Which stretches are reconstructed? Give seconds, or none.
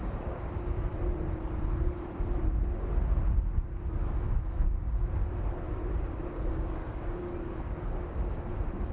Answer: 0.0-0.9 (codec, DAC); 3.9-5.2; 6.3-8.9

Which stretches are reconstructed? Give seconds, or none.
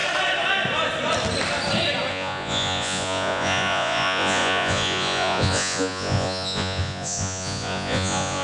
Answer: 2.1-8.4 (vocoder, Vocos)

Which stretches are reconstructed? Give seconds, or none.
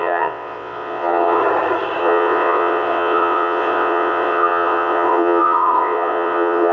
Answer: 0.0-1.4 (vocoder, WaveNeXt); 2.0-6.7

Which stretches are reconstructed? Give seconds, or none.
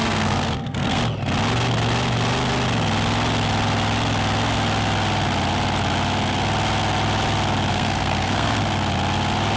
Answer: 0.0-1.0 (codec, SNAC); 7.7-8.6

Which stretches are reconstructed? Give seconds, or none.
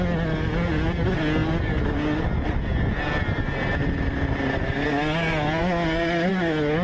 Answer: none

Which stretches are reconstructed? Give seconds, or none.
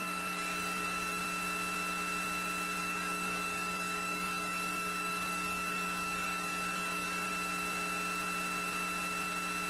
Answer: 0.0-1.2 (codec, DAC); 2.8-7.3